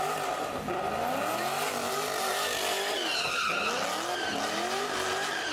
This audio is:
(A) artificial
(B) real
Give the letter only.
B